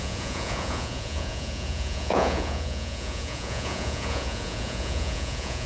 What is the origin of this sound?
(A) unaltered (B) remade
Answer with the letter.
B